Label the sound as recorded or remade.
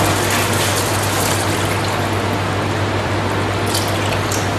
recorded